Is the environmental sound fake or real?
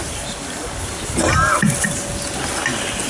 real